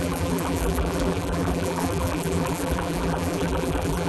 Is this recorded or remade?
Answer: remade